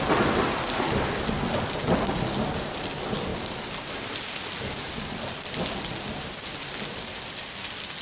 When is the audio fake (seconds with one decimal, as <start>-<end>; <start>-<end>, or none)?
none